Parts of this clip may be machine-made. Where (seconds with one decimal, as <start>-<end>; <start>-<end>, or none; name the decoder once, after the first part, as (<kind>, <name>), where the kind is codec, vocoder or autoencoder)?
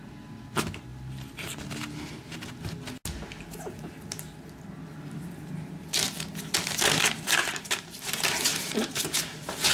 7.4-8.1 (vocoder, BigVGAN v2); 8.5-9.7